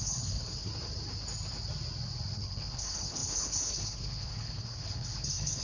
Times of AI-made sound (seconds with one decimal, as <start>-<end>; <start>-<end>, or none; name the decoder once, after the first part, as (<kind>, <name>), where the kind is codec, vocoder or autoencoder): 0.0-0.7 (codec, HILCodec); 2.3-5.6